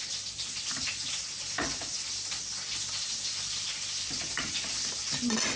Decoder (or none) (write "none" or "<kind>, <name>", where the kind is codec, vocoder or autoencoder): none